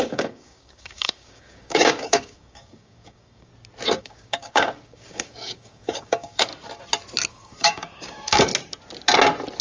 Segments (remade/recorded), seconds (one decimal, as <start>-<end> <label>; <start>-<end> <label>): 0.0-3.5 remade; 3.5-4.0 recorded; 4.0-6.5 remade; 6.5-7.3 recorded; 7.3-8.5 remade; 8.5-9.6 recorded